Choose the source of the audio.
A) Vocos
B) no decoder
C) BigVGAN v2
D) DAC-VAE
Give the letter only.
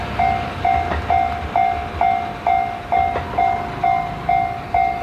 B